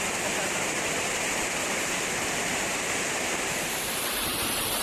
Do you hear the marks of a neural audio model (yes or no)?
yes